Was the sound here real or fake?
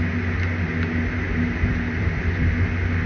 real